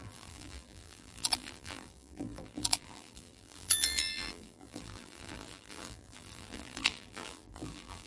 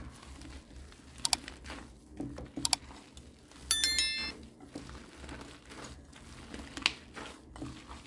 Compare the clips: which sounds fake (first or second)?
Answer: first